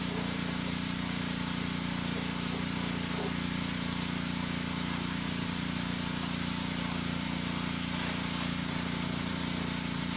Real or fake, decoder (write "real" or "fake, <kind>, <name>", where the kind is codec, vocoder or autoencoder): fake, vocoder, BigVGAN v2